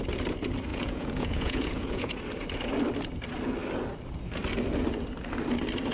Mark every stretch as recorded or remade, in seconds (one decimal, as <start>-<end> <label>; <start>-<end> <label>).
0.0-0.7 recorded; 0.7-2.1 remade; 2.1-5.9 recorded